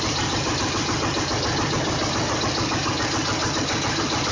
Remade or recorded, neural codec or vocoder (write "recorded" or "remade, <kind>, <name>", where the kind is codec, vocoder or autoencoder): recorded